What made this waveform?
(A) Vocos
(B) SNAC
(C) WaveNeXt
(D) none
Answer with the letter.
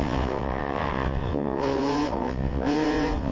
C